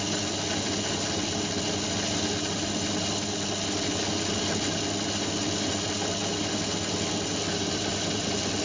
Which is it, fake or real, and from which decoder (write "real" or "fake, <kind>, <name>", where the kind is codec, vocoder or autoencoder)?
real